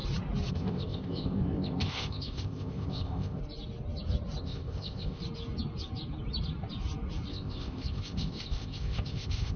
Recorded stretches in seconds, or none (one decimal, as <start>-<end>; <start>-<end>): 0.0-0.5; 3.4-4.4; 5.2-7.3